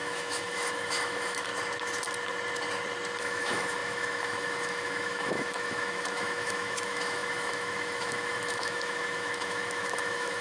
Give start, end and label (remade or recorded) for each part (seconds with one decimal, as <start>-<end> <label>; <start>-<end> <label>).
0.0-1.5 remade; 1.5-3.2 recorded; 3.2-10.4 remade